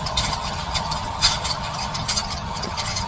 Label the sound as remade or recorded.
remade